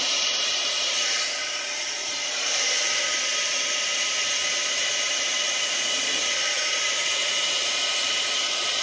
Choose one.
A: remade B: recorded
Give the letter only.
A